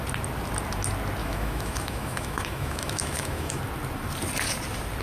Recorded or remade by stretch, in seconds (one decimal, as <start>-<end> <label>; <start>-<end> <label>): 0.0-1.2 recorded; 1.2-3.6 remade; 3.6-5.0 recorded